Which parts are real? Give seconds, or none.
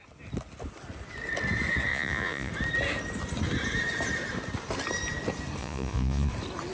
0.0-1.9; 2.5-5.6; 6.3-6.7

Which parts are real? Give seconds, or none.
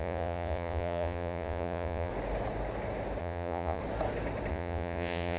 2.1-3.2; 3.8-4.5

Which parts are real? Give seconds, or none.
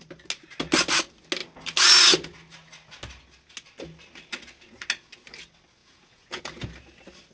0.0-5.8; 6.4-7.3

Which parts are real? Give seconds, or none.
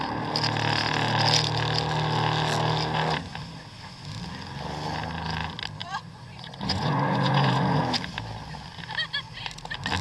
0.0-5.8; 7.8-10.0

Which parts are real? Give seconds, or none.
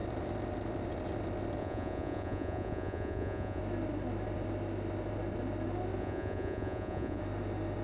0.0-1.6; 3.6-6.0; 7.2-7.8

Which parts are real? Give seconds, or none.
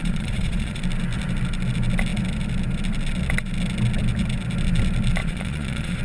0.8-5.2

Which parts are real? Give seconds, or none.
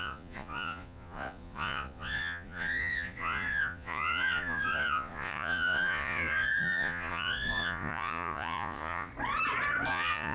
9.1-9.9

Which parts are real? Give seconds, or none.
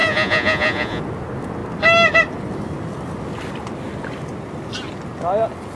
1.0-5.7